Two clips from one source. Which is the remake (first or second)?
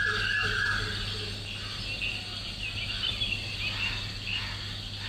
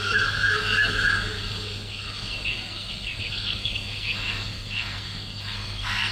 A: second